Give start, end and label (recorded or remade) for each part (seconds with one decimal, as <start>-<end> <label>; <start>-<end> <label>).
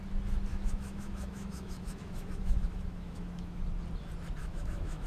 0.0-0.5 recorded; 0.5-3.6 remade; 3.6-4.4 recorded; 4.4-5.1 remade